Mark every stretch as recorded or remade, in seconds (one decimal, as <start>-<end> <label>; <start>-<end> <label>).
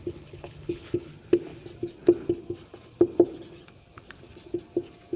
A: 0.0-1.1 remade; 1.1-5.2 recorded